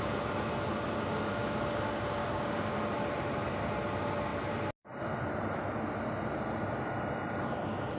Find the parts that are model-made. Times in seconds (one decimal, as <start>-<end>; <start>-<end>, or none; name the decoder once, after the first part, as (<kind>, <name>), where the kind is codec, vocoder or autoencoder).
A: 2.2-2.7 (codec, DAC)